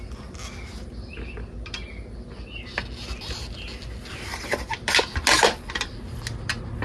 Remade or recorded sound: recorded